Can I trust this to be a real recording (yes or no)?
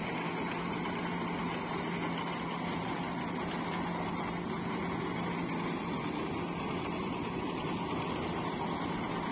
yes